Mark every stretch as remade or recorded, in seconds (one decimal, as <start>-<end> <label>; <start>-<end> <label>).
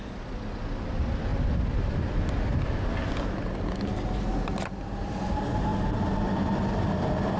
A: 0.0-7.4 recorded